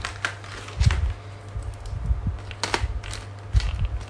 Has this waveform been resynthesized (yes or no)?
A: no